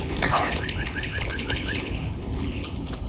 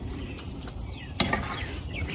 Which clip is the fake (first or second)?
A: first